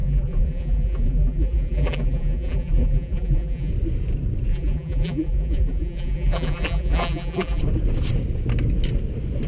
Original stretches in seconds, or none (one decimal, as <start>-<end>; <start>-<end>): 3.7-4.5; 7.6-9.5